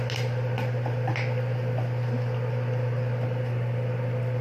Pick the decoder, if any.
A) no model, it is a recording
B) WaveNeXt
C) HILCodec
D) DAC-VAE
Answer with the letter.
A